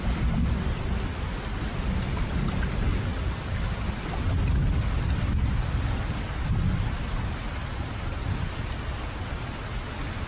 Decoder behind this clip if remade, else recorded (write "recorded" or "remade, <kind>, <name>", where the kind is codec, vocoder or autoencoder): recorded